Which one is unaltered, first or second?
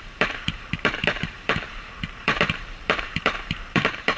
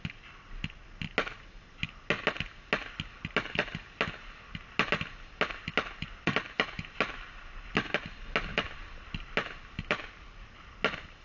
second